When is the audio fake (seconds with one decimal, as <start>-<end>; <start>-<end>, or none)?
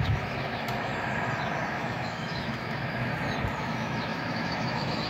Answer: 0.0-0.9; 1.7-3.1; 3.6-5.1